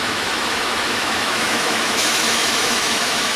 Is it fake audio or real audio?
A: fake